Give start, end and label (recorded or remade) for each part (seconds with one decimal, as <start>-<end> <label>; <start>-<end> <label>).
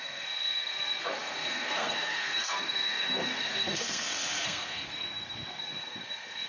0.0-6.5 remade